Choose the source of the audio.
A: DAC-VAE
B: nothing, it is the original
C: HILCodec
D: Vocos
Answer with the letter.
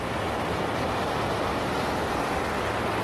B